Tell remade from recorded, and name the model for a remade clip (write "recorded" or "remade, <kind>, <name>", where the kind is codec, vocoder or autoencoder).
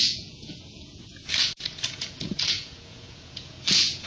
remade, vocoder, Vocos